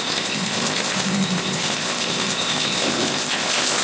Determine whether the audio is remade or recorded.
remade